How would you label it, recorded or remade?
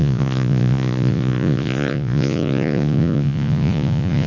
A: remade